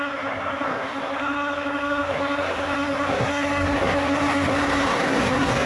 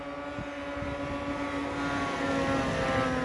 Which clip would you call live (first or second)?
second